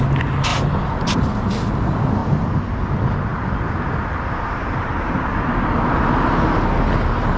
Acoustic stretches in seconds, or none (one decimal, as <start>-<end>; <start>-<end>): 0.0-0.5; 1.2-2.2; 2.7-3.3; 4.9-7.4